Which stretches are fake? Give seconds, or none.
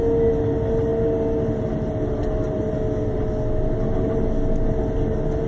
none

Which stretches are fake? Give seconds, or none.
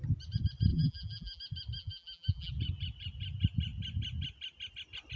0.7-1.4 (vocoder, BigVGAN v2); 1.8-2.5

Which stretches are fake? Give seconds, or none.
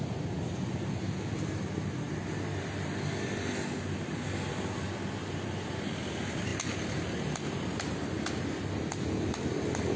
none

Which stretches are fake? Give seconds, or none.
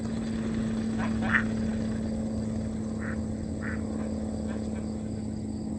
none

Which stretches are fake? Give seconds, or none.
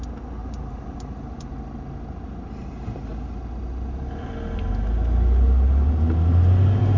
0.4-1.5 (vocoder, BigVGAN v2)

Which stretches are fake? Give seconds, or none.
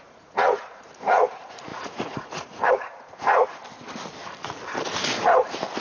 0.0-3.6 (vocoder, Vocos)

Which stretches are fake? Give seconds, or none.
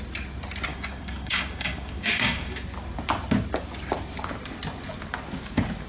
0.7-2.6 (codec, DAC)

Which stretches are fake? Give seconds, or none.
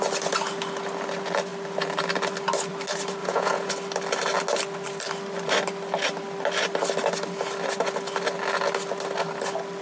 3.2-3.7 (vocoder, Vocos)